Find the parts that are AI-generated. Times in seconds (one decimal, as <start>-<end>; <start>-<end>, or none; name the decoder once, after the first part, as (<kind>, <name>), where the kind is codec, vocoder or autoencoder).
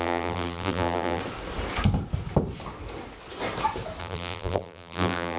0.0-1.2 (vocoder, BigVGAN v2); 4.0-5.4